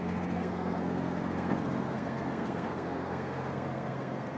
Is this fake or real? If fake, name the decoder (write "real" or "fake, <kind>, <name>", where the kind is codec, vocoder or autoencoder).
fake, codec, SNAC